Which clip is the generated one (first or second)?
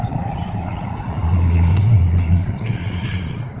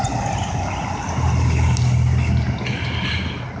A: first